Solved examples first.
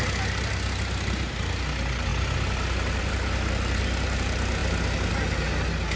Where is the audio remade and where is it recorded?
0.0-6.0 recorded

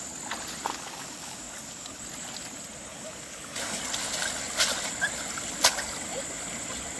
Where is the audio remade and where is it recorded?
0.0-0.7 recorded; 0.7-2.0 remade; 2.0-2.9 recorded; 2.9-3.8 remade; 3.8-7.0 recorded

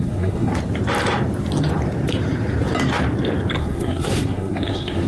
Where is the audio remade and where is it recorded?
0.0-0.5 remade; 0.5-3.6 recorded; 3.6-5.1 remade